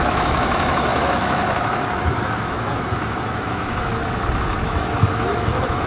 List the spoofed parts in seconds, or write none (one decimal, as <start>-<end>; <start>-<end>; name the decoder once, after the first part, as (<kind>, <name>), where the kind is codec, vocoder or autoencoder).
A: 0.0-4.0 (autoencoder, DAC-VAE); 4.6-5.9